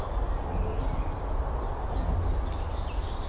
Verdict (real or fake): real